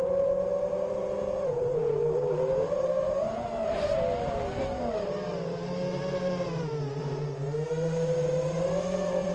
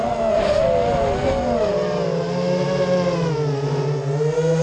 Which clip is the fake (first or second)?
first